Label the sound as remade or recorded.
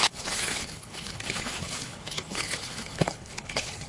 remade